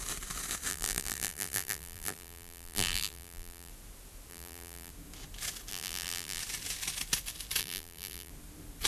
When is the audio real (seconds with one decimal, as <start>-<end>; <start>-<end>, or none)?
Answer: 0.0-0.7; 3.7-4.3; 4.9-5.7; 6.4-7.6; 8.3-8.9